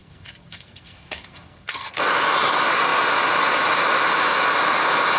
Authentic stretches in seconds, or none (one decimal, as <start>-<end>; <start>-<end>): 2.1-5.2